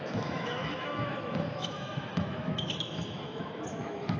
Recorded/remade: remade